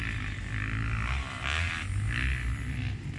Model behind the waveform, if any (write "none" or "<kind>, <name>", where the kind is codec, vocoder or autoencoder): none